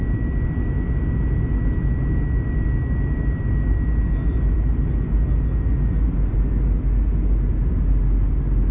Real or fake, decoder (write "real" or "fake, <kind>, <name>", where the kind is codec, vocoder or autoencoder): real